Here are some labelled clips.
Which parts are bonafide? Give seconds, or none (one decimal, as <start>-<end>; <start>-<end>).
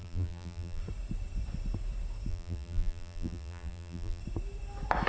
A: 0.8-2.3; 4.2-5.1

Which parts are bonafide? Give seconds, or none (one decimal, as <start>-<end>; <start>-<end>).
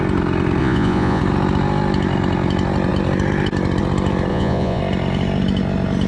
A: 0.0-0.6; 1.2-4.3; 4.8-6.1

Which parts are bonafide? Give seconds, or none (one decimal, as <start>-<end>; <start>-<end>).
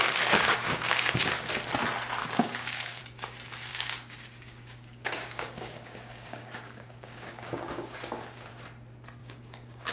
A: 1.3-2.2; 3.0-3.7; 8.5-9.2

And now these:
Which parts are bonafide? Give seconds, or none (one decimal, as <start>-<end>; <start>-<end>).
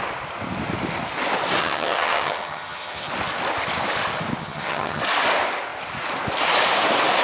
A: 0.0-1.6; 3.1-4.4; 5.0-7.2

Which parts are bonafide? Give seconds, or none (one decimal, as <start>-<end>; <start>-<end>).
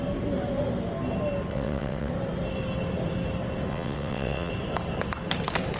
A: 0.0-1.5; 2.1-3.7; 4.5-5.8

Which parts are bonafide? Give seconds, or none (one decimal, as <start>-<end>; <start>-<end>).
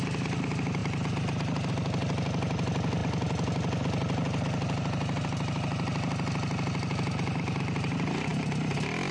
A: 0.0-9.1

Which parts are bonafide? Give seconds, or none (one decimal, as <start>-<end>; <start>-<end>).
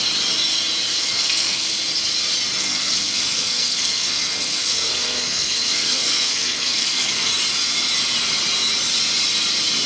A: 0.0-0.9; 1.7-2.6; 7.3-9.9